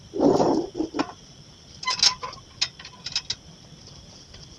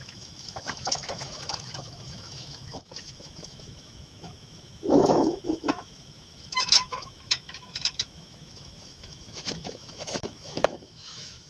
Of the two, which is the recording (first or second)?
first